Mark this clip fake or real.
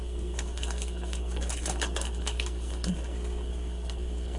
fake